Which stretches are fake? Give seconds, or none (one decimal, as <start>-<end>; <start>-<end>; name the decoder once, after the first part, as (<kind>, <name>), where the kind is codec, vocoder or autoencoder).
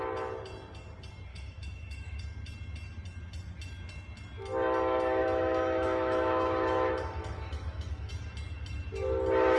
1.3-2.2 (autoencoder, DAC-VAE); 5.2-8.1